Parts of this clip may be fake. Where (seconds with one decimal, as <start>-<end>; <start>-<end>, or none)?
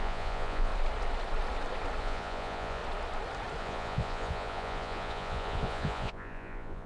0.0-0.7; 2.0-2.8; 3.6-6.9